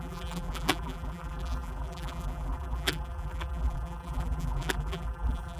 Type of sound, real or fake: fake